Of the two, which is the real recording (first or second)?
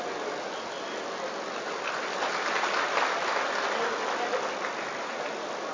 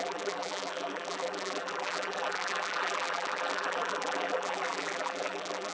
first